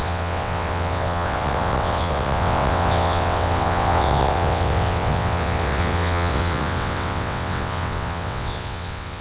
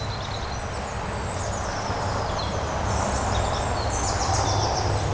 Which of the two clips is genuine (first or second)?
second